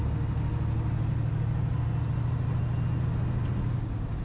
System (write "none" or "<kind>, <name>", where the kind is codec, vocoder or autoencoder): none